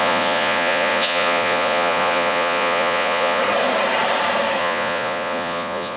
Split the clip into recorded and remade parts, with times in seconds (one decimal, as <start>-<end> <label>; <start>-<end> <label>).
0.0-3.4 remade; 3.4-4.6 recorded; 4.6-6.0 remade